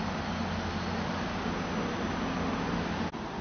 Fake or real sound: real